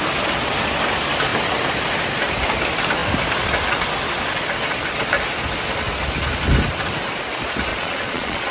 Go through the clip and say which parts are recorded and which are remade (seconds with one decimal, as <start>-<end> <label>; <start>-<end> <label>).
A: 0.0-7.7 recorded; 7.7-8.5 remade